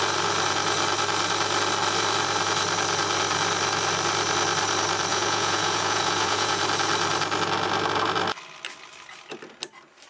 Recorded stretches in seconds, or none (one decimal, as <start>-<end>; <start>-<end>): 0.0-5.1; 6.6-10.1